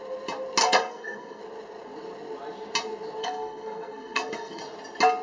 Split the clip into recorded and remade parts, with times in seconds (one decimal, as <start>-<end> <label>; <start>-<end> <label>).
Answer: 0.0-0.6 recorded; 0.6-1.4 remade; 1.4-3.2 recorded; 3.2-4.6 remade; 4.6-5.2 recorded